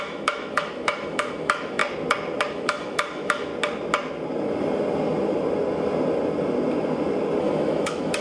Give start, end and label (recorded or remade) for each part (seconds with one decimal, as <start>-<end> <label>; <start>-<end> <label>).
0.0-1.8 remade; 1.8-2.5 recorded; 2.5-3.5 remade; 3.5-7.4 recorded; 7.4-8.2 remade